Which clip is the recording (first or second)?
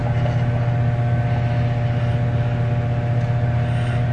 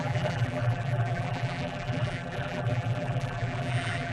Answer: first